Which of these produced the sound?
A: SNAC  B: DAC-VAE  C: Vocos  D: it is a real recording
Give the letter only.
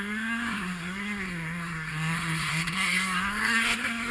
A